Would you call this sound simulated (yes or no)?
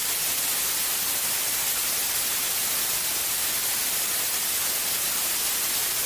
no